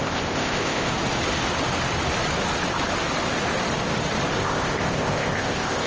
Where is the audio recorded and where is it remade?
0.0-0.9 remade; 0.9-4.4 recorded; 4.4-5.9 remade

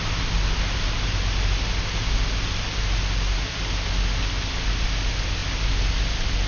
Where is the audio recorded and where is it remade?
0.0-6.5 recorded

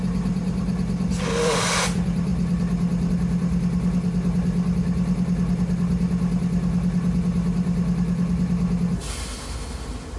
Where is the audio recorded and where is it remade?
0.0-10.2 recorded

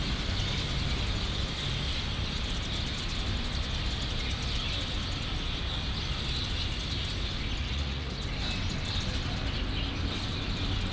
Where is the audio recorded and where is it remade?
0.0-7.6 recorded; 7.6-8.1 remade; 8.1-10.9 recorded